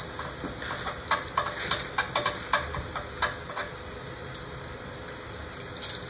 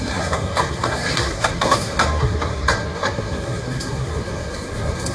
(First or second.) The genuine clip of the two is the first